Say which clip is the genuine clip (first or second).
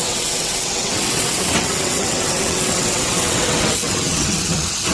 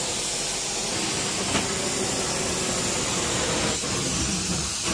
second